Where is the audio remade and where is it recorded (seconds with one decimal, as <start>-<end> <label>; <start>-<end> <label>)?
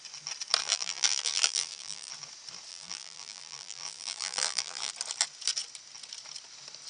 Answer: 0.0-0.6 recorded; 0.6-2.1 remade; 2.1-2.7 recorded; 2.7-4.9 remade; 4.9-6.9 recorded